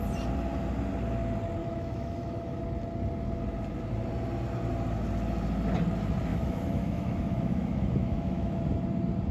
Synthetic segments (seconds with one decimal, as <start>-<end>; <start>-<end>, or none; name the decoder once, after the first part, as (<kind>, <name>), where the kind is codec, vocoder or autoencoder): 1.6-2.6 (autoencoder, DAC-VAE); 6.3-8.6